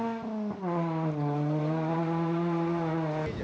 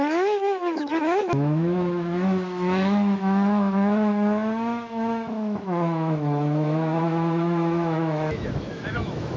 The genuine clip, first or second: first